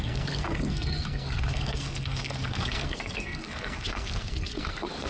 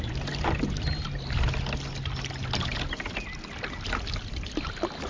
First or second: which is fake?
first